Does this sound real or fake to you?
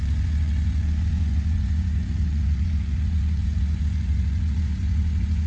fake